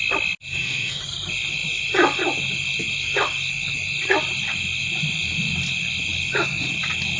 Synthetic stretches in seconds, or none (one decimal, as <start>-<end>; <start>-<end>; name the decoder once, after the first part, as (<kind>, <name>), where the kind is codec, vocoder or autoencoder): 0.5-1.0 (autoencoder, DAC-VAE)